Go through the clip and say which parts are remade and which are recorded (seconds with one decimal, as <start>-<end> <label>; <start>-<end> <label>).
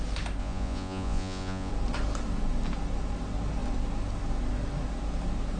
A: 0.0-0.4 recorded; 0.4-1.7 remade; 1.7-5.6 recorded